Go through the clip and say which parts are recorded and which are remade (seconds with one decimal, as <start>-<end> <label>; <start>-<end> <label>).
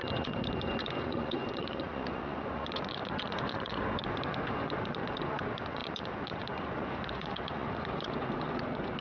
0.0-9.0 remade